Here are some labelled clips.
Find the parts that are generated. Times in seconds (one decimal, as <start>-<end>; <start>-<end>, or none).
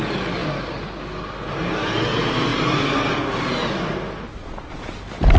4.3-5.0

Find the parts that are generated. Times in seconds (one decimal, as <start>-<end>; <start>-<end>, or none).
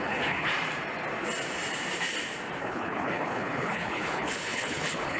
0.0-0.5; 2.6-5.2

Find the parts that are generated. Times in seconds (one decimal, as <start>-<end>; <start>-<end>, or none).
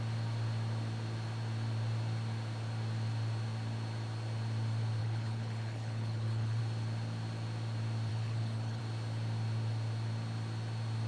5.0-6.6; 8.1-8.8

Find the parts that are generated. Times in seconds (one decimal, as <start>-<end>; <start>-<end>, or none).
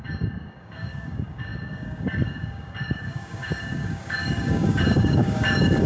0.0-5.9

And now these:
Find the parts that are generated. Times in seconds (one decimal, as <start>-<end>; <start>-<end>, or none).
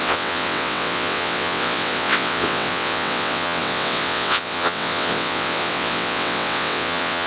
0.0-7.3